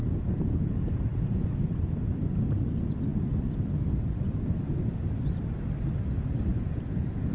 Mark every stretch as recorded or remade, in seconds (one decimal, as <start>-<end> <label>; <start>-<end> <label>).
0.0-1.6 remade; 1.6-6.5 recorded; 6.5-7.3 remade